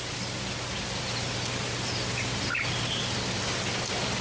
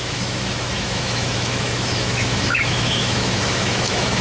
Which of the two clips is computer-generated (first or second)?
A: second